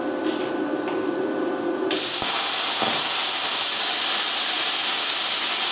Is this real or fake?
real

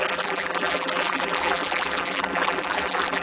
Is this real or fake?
fake